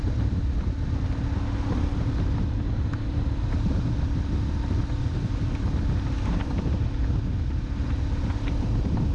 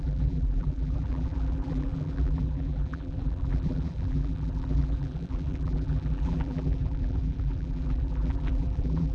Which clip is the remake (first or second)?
second